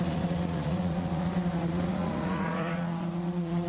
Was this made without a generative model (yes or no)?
no